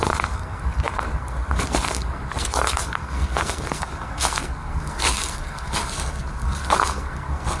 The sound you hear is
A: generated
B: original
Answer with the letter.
A